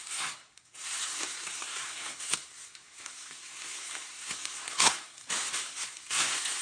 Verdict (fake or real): fake